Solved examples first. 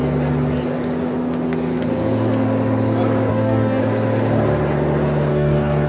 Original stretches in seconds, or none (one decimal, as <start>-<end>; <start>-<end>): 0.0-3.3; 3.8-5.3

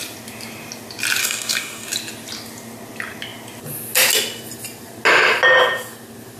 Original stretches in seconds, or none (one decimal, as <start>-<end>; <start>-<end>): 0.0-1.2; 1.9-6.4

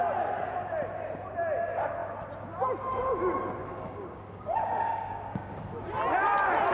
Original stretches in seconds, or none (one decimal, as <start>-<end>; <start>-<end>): 0.0-3.6; 5.6-6.7

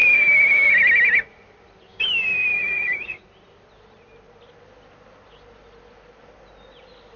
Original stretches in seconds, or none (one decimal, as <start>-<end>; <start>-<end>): 0.7-1.9; 3.2-7.2

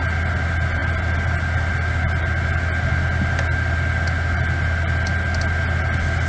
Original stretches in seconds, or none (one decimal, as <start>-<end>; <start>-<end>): 0.0-6.3

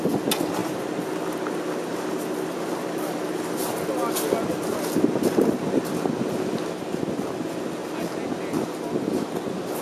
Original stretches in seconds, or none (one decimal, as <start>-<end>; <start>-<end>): 0.0-9.8

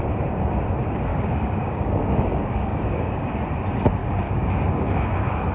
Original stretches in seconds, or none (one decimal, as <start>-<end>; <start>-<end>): 0.0-1.1; 3.3-4.0; 4.9-5.5